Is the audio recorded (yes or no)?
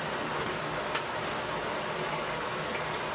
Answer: yes